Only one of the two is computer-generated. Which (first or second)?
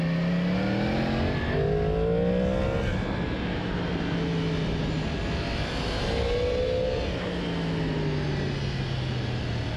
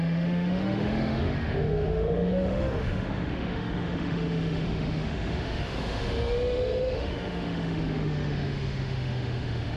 second